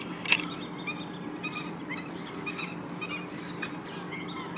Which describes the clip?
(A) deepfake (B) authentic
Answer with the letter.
B